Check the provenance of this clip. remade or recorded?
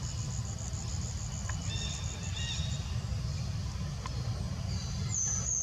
recorded